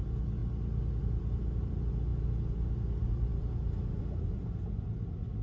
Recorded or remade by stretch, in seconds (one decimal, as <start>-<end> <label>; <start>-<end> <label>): 0.0-5.4 recorded